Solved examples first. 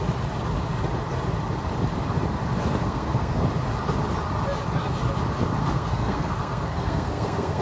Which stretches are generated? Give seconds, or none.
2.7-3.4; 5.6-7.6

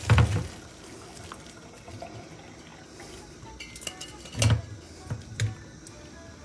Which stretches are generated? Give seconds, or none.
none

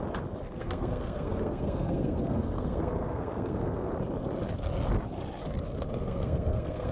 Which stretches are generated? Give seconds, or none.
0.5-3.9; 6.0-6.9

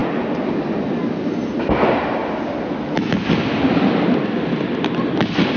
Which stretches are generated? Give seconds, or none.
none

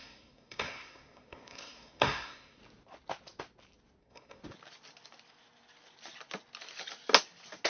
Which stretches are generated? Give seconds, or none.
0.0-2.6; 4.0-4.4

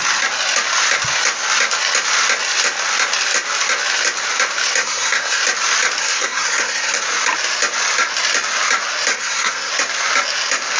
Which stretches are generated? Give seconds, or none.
4.8-5.4; 6.0-7.0; 9.1-9.7

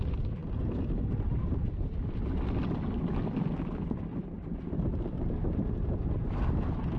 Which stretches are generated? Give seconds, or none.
none